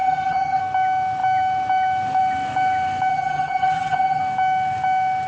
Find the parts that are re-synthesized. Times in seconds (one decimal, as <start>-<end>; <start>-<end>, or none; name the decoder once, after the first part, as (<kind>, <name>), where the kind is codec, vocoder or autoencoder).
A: 0.0-0.6 (vocoder, HiFi-GAN); 3.1-4.2